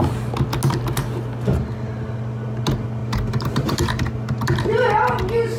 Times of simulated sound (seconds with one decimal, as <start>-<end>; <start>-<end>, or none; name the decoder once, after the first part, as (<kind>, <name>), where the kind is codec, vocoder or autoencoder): 3.0-4.3 (vocoder, BigVGAN v2)